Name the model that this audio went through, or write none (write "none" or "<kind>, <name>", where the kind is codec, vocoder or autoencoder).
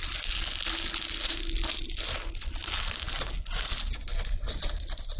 none